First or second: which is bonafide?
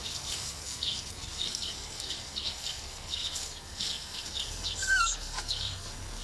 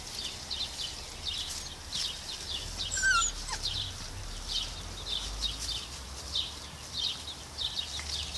second